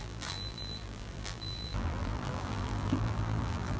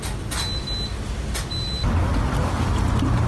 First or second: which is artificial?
first